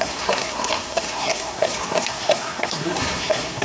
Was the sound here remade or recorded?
remade